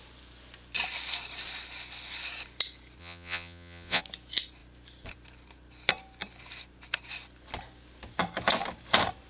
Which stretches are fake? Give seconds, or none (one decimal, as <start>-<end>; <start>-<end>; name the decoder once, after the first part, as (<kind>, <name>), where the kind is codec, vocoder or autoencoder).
3.0-4.0 (vocoder, Vocos)